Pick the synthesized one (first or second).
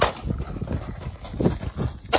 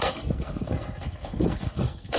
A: second